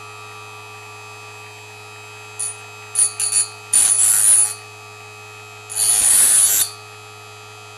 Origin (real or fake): real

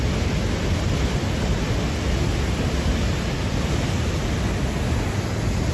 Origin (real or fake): real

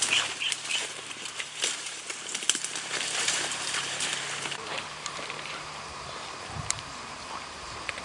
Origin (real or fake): fake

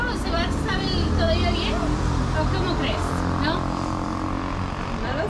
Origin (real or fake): fake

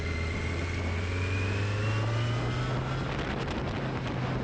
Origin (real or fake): real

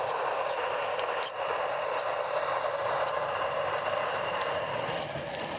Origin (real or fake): real